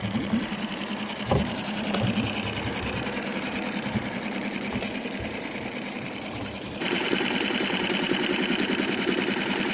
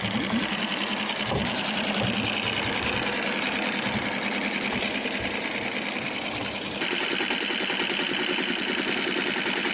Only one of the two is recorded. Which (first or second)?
second